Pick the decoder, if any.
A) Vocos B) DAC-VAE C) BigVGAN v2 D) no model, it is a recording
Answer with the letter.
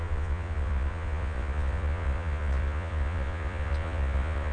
A